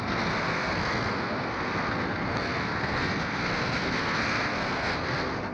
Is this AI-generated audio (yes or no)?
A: yes